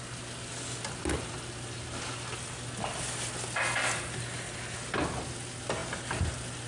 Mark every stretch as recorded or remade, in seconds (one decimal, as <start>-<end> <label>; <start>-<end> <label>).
0.0-6.7 recorded